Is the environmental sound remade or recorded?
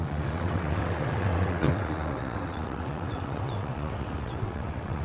remade